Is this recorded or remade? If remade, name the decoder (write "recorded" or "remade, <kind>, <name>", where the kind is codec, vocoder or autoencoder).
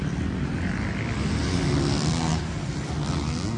recorded